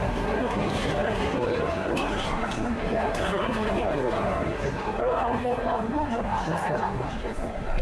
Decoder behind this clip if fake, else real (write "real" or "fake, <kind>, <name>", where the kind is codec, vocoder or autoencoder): fake, codec, SNAC